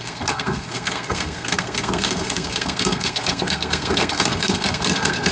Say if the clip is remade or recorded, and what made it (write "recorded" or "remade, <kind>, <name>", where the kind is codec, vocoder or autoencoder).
remade, codec, SNAC